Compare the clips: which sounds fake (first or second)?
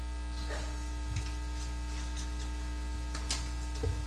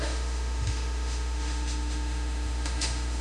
second